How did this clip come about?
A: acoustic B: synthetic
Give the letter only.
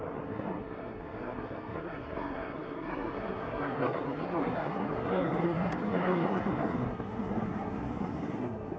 B